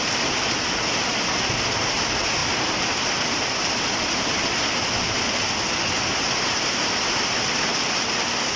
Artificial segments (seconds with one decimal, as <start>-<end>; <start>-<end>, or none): none